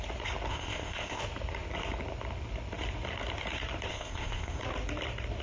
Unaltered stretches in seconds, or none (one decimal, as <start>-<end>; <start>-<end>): 0.0-0.5; 1.2-3.9; 4.6-5.4